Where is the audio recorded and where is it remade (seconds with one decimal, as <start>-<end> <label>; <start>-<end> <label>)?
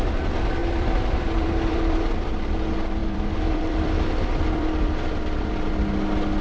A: 0.0-0.6 recorded; 0.6-2.6 remade; 2.6-3.0 recorded; 3.0-5.8 remade; 5.8-6.4 recorded